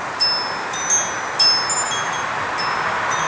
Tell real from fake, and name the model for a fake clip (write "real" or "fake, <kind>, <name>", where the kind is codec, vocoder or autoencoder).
real